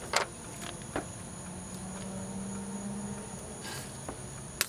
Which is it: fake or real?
real